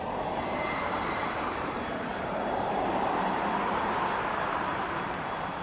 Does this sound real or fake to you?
fake